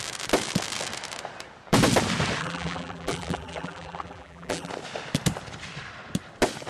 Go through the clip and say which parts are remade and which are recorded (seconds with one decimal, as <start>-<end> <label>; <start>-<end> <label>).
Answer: 0.0-2.4 recorded; 2.4-4.7 remade; 4.7-6.7 recorded